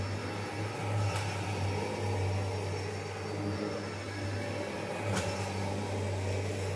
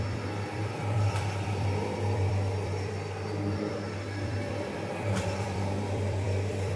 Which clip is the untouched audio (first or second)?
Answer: first